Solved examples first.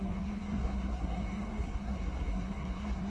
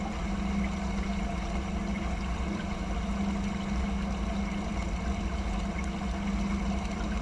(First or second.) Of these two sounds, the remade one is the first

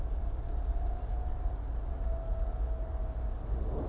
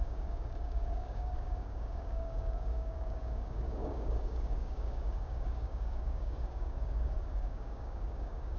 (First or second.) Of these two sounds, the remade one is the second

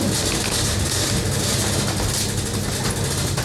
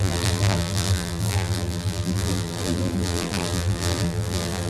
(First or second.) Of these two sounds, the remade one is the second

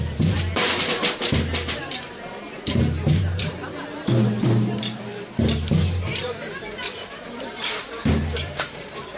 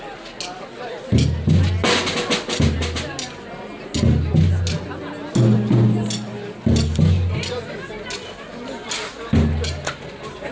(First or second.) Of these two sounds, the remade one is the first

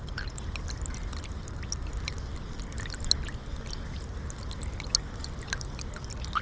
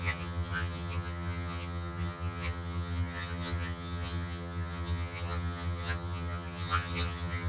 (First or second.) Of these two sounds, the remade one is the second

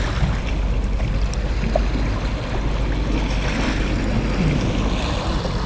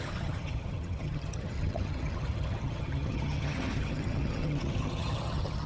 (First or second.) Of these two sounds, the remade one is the second